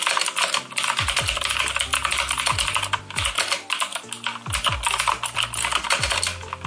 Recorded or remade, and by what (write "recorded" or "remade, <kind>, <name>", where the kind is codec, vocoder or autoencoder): recorded